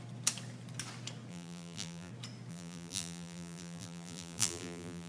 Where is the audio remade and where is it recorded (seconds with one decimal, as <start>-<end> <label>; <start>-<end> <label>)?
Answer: 0.0-1.3 recorded; 1.3-2.1 remade; 2.1-2.5 recorded; 2.5-5.1 remade